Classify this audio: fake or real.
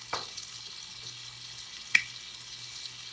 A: fake